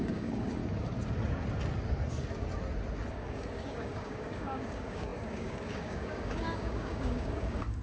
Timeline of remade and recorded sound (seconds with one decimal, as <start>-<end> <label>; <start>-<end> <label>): 0.0-0.6 remade; 0.6-3.1 recorded; 3.1-7.8 remade